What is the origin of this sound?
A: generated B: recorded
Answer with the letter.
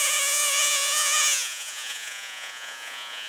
A